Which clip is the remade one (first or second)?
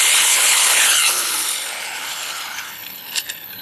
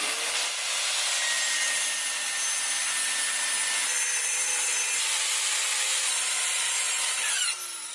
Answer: first